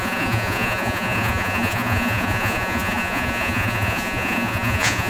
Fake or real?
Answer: fake